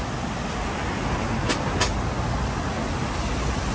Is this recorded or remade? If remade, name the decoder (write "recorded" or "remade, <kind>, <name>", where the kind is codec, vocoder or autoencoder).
recorded